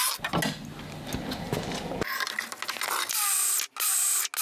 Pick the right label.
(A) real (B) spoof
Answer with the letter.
A